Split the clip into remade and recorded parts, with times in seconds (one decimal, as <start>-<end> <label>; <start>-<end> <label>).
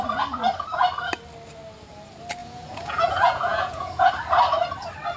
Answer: 0.0-2.4 recorded; 2.4-4.1 remade; 4.1-5.2 recorded